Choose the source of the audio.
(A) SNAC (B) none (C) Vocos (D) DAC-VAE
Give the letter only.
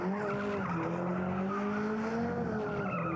B